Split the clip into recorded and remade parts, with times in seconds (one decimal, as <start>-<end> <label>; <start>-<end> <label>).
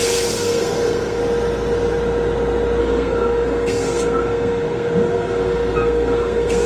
0.0-1.2 remade; 1.2-2.8 recorded; 2.8-6.7 remade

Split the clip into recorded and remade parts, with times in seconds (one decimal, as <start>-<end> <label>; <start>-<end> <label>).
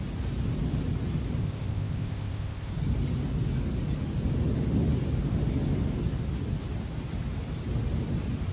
0.0-1.4 recorded; 1.4-2.7 remade; 2.7-8.5 recorded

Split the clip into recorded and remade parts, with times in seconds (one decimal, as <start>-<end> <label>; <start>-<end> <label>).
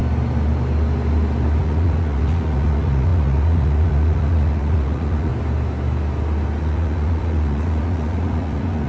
0.0-1.6 recorded; 1.6-5.3 remade; 5.3-6.6 recorded; 6.6-8.9 remade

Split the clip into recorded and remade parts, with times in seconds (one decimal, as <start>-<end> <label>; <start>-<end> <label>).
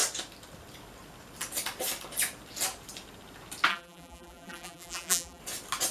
0.0-3.7 recorded; 3.7-5.4 remade; 5.4-5.9 recorded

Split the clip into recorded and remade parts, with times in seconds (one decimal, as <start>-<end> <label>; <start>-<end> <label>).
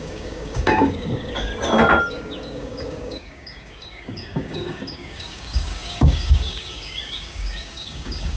0.0-1.5 remade; 1.5-2.1 recorded; 2.1-8.4 remade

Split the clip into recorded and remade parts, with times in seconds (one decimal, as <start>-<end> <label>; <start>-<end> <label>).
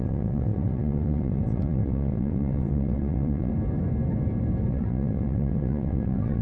0.0-3.5 remade; 3.5-4.7 recorded; 4.7-6.4 remade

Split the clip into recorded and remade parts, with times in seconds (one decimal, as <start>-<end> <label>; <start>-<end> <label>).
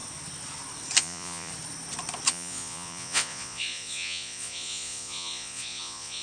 0.0-1.0 recorded; 1.0-1.5 remade; 1.5-2.3 recorded; 2.3-6.2 remade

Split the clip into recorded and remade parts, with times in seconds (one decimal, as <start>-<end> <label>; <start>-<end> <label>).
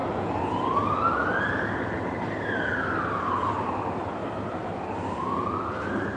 0.0-3.2 recorded; 3.2-4.6 remade; 4.6-5.7 recorded; 5.7-6.2 remade